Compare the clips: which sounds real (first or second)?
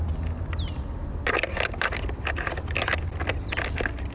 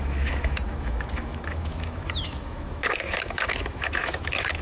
first